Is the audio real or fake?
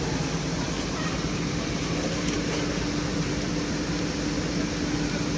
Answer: real